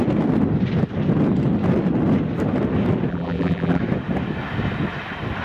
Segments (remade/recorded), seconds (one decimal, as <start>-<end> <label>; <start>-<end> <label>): 0.0-3.1 recorded; 3.1-3.8 remade; 3.8-5.4 recorded